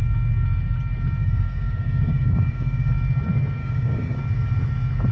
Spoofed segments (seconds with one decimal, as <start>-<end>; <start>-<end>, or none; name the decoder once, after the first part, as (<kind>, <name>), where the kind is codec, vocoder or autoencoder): 1.2-2.9 (codec, DAC); 3.6-4.2